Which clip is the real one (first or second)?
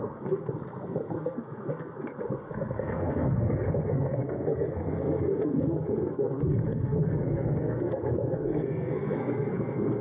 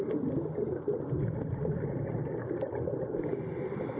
second